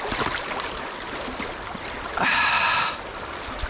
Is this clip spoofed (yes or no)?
no